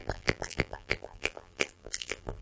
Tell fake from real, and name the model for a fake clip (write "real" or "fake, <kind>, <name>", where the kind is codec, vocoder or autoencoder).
fake, vocoder, BigVGAN v2